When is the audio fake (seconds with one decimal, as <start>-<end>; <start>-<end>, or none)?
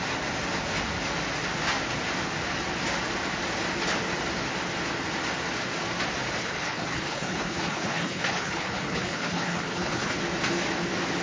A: 6.4-10.2